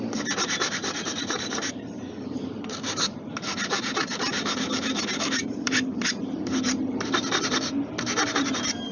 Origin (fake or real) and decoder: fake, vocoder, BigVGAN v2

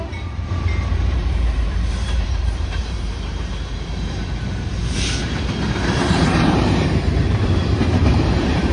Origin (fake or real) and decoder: fake, vocoder, BigVGAN v2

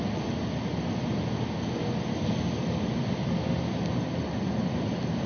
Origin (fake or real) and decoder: real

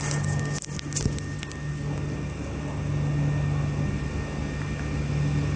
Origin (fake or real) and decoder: real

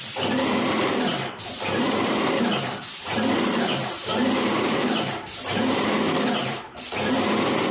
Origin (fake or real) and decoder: fake, vocoder, BigVGAN v2